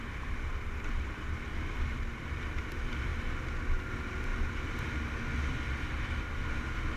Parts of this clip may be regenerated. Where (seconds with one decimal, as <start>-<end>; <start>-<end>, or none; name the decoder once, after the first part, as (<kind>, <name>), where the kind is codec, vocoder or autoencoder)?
none